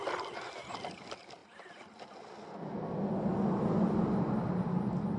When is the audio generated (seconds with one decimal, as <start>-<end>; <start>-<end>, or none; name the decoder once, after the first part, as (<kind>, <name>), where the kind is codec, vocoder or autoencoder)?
none